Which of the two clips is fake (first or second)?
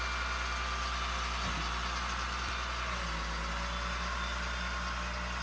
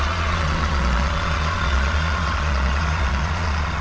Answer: second